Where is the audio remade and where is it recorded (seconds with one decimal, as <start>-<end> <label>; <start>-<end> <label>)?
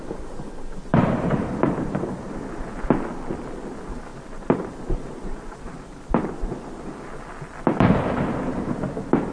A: 0.0-0.9 recorded; 0.9-2.9 remade; 2.9-4.1 recorded; 4.1-6.5 remade; 6.5-9.3 recorded